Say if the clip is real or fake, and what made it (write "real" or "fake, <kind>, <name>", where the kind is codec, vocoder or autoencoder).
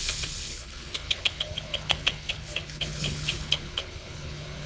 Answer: fake, codec, HILCodec